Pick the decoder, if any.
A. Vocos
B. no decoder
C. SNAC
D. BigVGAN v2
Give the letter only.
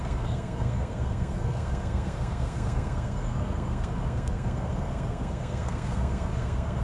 C